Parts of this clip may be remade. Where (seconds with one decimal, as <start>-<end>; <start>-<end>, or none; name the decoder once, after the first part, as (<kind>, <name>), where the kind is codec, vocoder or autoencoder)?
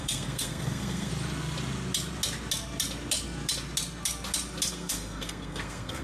0.0-1.1 (codec, SNAC); 4.7-6.0